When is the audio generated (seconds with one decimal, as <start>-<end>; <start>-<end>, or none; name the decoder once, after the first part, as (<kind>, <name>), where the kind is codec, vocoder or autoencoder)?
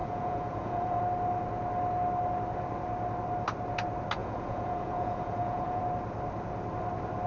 0.0-1.0 (vocoder, Vocos); 4.2-5.8